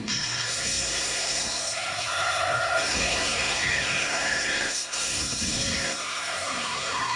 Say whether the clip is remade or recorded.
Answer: remade